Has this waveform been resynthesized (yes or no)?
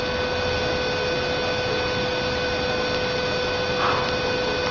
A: no